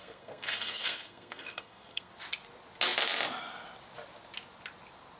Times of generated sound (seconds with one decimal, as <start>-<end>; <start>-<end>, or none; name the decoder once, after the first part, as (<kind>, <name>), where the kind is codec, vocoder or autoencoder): 0.0-2.1 (codec, SNAC)